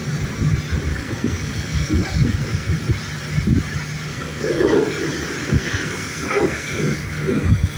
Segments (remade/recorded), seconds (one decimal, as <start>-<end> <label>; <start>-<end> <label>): 0.0-0.9 recorded; 0.9-2.8 remade; 2.8-4.1 recorded; 4.1-5.0 remade; 5.0-5.4 recorded; 5.4-7.8 remade